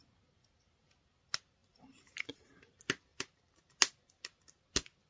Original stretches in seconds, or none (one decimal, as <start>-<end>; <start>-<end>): 0.0-1.6; 2.7-3.1; 3.7-5.1

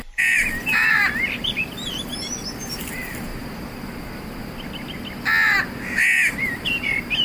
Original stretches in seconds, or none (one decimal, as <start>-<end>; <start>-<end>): 1.6-2.7; 3.3-6.3

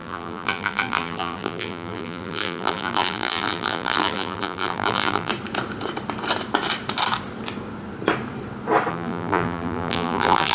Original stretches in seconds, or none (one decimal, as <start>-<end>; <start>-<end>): 5.3-8.9

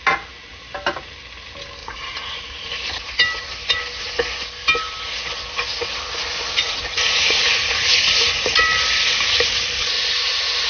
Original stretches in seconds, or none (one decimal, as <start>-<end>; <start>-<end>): 0.0-1.8; 2.7-6.6; 8.6-10.7

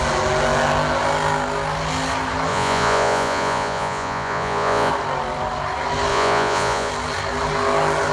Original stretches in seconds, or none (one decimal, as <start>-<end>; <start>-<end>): 0.0-2.5; 4.9-6.1; 6.9-8.1